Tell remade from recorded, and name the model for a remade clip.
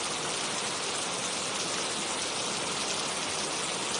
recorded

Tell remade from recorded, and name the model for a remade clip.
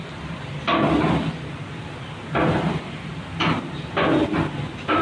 recorded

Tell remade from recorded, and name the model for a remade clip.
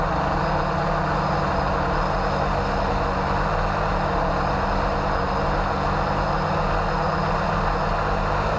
recorded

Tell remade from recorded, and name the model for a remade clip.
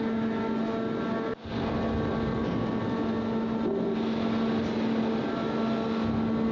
recorded